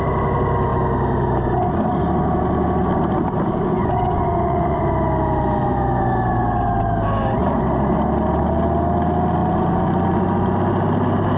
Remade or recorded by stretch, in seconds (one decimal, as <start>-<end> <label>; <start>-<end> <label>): 0.0-3.8 recorded; 3.8-4.8 remade; 4.8-11.4 recorded